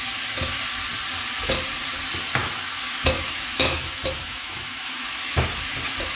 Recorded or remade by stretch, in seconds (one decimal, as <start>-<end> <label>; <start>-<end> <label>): 0.0-2.4 recorded; 2.4-5.5 remade; 5.5-6.2 recorded